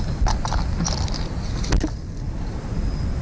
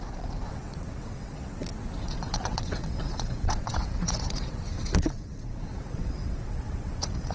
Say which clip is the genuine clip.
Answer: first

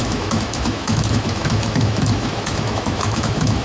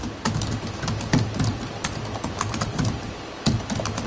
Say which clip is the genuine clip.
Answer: second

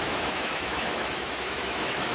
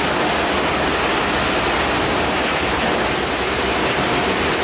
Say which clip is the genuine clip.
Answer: second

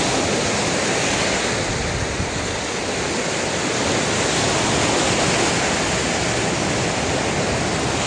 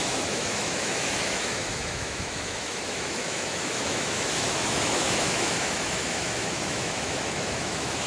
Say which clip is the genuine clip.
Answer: first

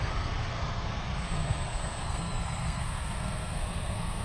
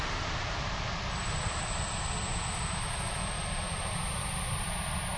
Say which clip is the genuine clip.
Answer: second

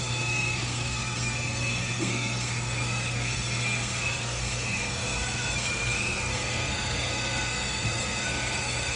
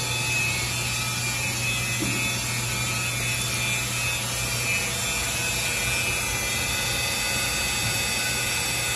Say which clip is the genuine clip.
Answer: second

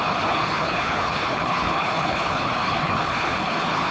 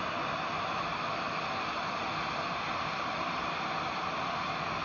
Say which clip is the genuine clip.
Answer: second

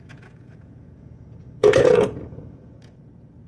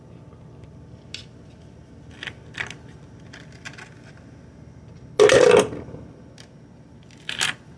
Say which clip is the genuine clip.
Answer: second